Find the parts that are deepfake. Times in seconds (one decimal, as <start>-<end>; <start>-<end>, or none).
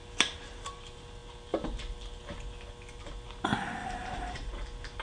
3.8-4.5